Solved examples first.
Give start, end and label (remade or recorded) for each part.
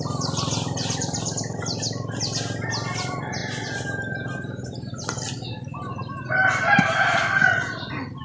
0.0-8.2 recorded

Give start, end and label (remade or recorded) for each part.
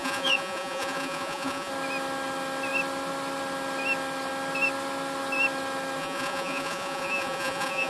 0.0-1.7 remade; 1.7-6.0 recorded; 6.0-7.9 remade